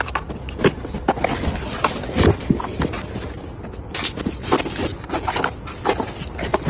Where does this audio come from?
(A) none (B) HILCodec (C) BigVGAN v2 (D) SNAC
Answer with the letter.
A